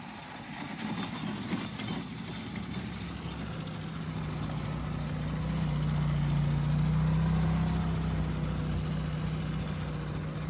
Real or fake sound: real